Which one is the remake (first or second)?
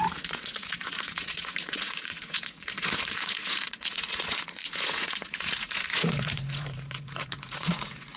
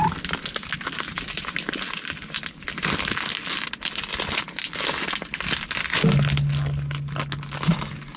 first